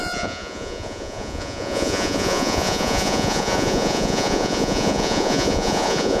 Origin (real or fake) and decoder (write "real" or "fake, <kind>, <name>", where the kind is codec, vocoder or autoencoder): fake, vocoder, Vocos